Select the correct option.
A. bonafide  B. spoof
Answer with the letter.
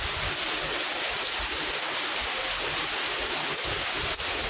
A